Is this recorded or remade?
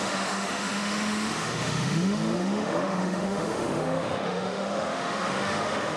remade